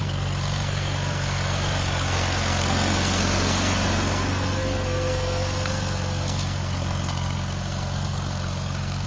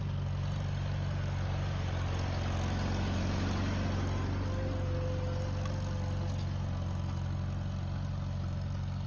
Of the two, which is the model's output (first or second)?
first